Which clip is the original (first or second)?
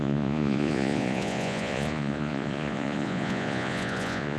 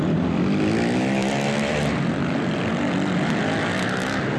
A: second